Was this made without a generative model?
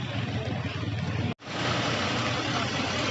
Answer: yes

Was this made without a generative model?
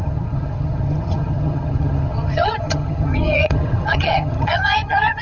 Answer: no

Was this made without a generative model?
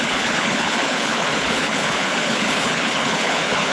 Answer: no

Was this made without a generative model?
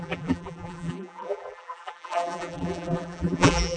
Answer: no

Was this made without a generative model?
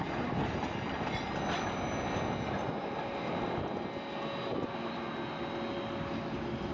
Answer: yes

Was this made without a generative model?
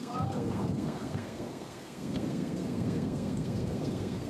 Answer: no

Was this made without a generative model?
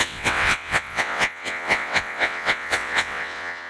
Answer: no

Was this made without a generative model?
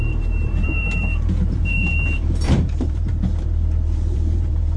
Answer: no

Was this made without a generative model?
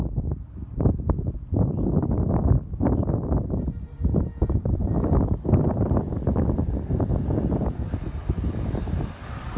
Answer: no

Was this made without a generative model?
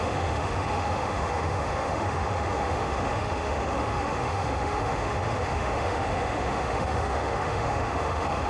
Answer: no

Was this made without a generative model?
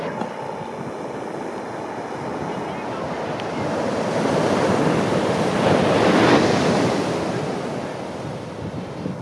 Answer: yes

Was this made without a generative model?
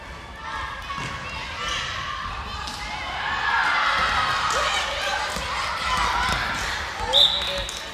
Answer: yes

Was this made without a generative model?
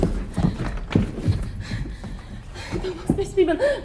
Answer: yes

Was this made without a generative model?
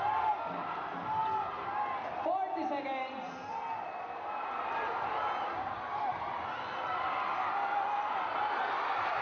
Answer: yes